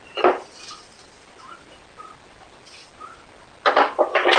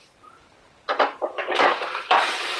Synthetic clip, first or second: second